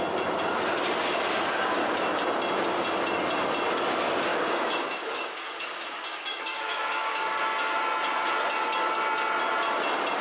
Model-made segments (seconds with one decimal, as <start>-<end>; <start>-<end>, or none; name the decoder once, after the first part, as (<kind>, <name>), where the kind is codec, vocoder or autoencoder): 4.3-7.4 (codec, DAC)

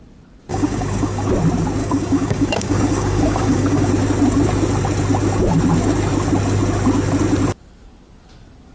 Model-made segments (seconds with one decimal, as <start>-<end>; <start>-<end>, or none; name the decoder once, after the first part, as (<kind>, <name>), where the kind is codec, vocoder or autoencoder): 0.5-1.3 (codec, DAC); 1.8-3.9